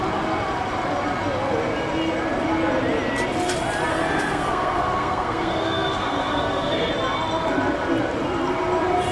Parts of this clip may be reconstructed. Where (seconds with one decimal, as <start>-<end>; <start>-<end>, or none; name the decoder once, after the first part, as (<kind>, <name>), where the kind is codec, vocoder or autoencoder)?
3.9-6.9 (codec, SNAC)

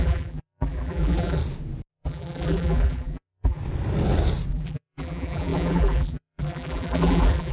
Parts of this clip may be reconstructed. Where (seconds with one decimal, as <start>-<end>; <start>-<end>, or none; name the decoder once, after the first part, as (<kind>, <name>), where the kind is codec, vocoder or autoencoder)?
0.0-1.4 (vocoder, BigVGAN v2); 1.9-3.6; 4.5-7.5

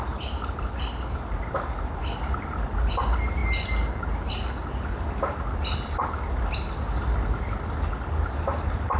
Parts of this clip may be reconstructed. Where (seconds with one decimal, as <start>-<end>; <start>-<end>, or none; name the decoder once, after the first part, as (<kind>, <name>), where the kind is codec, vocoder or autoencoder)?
none

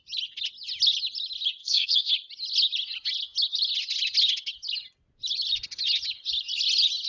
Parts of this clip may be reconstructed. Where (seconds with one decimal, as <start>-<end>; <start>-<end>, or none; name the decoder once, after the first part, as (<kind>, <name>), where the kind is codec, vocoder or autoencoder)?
1.6-2.1 (codec, SNAC)

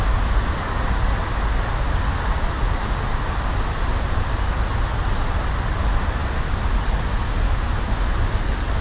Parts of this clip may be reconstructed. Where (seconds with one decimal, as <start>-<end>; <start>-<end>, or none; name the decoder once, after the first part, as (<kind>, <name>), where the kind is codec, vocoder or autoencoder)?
none